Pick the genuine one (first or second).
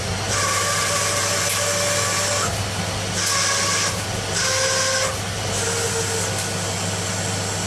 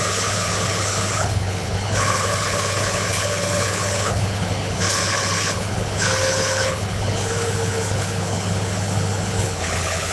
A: first